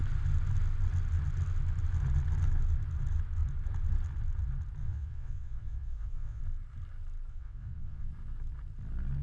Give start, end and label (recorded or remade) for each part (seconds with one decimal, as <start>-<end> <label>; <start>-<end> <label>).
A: 0.0-4.8 recorded; 4.8-6.4 remade; 6.4-7.3 recorded; 7.3-8.1 remade; 8.1-9.2 recorded